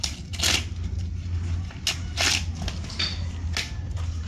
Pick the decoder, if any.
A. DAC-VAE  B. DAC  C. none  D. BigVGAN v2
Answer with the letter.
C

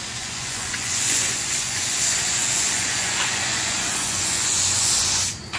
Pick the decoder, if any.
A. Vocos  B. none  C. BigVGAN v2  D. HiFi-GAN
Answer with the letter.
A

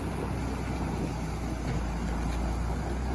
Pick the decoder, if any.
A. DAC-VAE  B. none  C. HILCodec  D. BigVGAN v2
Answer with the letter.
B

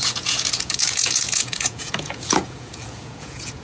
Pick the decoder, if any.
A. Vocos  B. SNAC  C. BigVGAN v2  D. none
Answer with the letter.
A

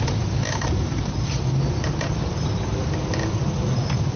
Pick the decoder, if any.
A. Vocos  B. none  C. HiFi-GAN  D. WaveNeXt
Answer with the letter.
B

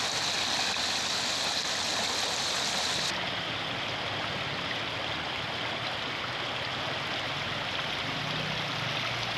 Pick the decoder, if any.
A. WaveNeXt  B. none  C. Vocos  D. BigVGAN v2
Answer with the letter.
B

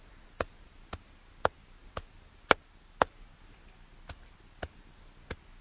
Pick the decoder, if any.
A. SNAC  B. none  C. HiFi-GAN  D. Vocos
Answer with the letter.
B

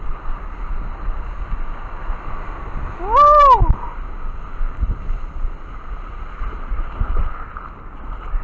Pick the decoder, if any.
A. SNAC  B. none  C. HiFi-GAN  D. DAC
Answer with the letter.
B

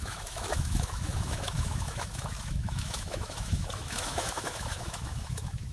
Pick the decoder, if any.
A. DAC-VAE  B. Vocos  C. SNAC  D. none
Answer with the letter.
A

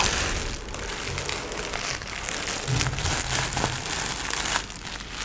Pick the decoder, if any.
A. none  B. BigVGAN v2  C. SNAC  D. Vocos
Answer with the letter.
A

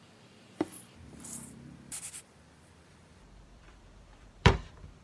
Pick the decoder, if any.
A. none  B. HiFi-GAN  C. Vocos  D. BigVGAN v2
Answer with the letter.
D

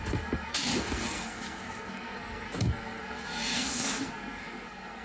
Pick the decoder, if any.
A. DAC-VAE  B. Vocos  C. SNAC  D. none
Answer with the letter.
C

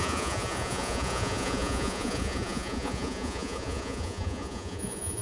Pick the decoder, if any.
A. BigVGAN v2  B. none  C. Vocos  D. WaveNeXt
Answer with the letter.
C